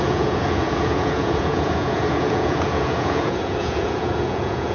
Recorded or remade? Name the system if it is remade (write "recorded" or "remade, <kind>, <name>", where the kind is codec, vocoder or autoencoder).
remade, vocoder, Vocos